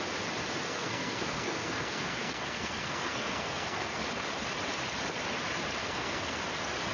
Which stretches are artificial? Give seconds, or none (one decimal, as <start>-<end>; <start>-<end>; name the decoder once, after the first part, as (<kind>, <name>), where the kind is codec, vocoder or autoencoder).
0.6-4.0 (codec, SNAC); 5.8-6.4